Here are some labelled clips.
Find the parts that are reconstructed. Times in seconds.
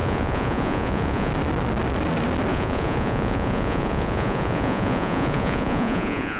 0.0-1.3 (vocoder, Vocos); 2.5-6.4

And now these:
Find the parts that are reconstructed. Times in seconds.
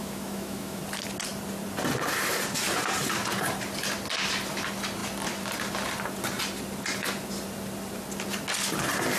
0.0-0.8 (autoencoder, DAC-VAE)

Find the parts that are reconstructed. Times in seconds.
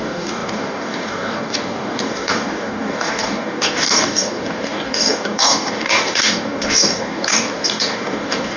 0.0-8.6 (codec, DAC)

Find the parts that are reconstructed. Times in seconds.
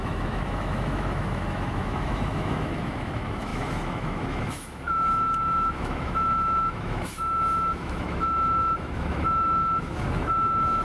0.0-10.8 (autoencoder, DAC-VAE)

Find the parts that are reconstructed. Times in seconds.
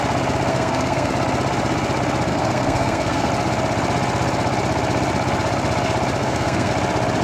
0.5-1.1 (codec, SNAC); 2.3-3.3; 6.2-6.7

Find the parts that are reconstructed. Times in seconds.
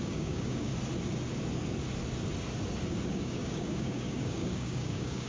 0.0-0.7 (codec, DAC); 3.1-5.3